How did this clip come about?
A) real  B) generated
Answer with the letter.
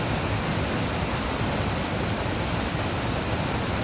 A